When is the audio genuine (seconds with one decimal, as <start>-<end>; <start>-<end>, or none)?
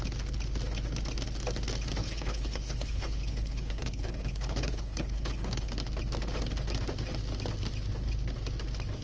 0.0-2.0; 5.7-9.0